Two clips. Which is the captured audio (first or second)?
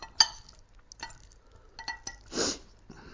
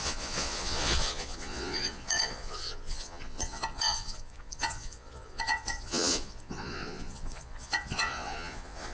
first